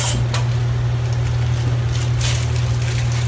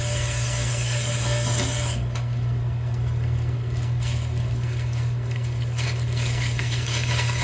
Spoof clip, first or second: second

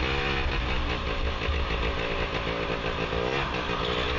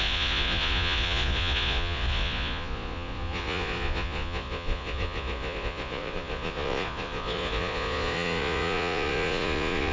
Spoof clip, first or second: second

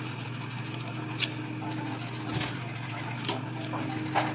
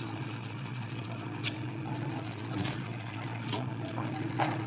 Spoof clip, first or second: second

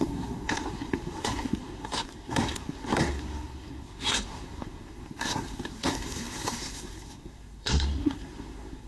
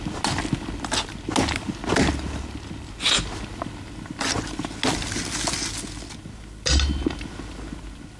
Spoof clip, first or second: first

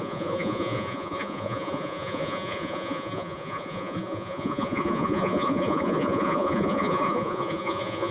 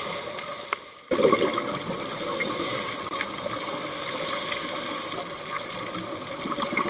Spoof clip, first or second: first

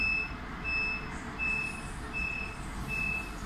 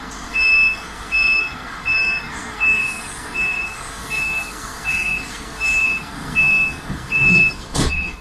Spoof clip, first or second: second